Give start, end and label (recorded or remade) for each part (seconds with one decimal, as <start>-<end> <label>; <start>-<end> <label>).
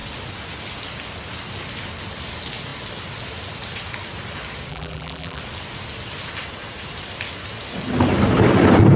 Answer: 0.0-4.7 recorded; 4.7-5.4 remade; 5.4-9.0 recorded